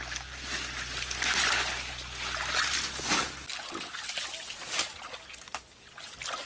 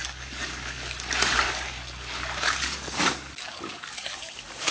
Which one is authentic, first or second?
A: first